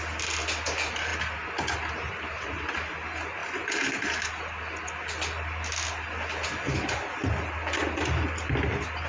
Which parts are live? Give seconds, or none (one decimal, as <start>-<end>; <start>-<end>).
0.0-9.1